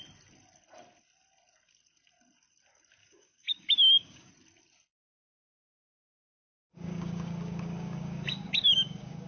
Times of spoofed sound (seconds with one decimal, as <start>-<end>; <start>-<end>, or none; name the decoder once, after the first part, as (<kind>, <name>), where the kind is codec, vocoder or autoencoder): 3.0-4.3 (codec, DAC); 6.7-9.3